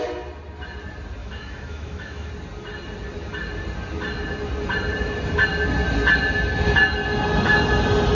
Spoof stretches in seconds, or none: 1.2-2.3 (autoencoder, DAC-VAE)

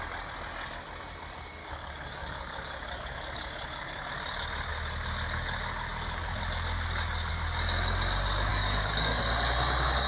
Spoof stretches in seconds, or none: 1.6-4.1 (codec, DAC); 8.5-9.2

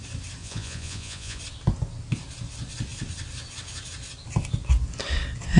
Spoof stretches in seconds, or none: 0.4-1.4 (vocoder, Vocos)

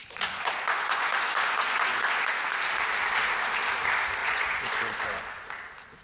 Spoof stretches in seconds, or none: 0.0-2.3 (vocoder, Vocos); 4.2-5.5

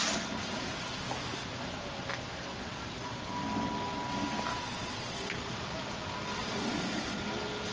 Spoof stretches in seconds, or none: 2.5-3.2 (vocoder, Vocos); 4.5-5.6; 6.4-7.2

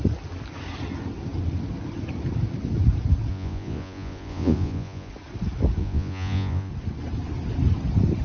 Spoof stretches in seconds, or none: 3.3-5.1 (vocoder, Vocos); 5.8-6.7

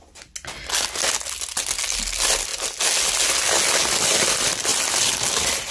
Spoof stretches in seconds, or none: none